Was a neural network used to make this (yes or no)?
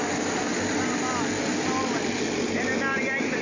no